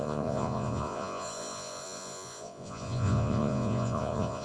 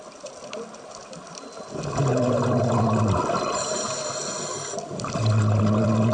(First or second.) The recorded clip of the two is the second